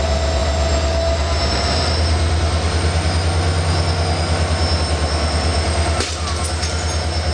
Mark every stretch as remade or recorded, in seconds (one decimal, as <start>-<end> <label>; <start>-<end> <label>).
0.0-7.3 recorded